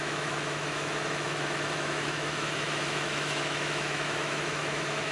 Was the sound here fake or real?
fake